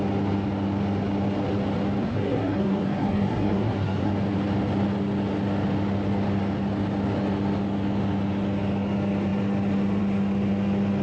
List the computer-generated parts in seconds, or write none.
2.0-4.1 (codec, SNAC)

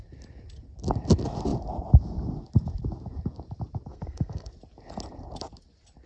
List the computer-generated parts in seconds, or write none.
3.9-4.5 (codec, SNAC)

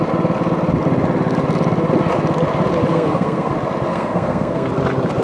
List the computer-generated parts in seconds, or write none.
2.9-3.5 (codec, SNAC); 3.9-4.7

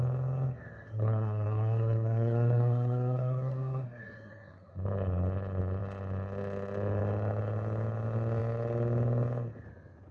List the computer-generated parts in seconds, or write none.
0.9-4.7 (codec, SNAC)

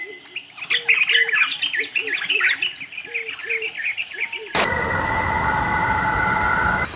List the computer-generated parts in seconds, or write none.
none